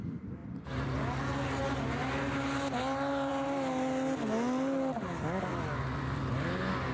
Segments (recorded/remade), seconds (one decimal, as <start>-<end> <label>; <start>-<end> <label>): 0.0-6.9 recorded